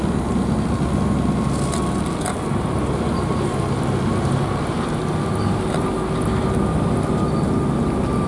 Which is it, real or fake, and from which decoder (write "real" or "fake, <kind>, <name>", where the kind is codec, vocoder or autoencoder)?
real